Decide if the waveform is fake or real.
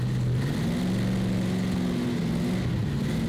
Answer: real